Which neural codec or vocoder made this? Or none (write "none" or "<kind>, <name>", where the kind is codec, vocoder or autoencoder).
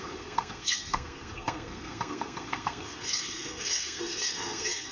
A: codec, SNAC